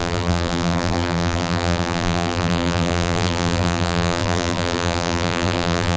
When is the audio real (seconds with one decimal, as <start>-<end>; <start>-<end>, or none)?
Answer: none